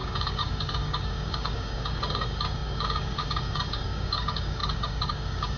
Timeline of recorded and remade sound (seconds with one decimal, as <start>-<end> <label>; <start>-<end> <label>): 0.0-5.6 remade